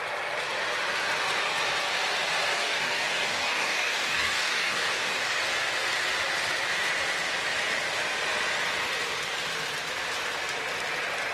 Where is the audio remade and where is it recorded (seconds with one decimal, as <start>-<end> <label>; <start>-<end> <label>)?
0.0-2.5 recorded; 2.5-5.4 remade; 5.4-11.3 recorded